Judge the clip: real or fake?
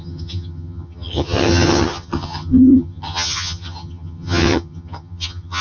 fake